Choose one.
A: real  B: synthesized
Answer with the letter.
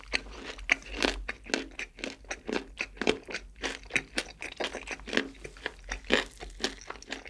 A